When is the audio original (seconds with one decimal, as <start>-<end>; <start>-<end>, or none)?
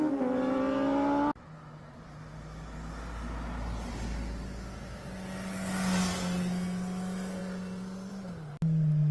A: 0.0-9.1